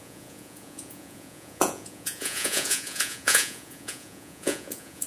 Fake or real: fake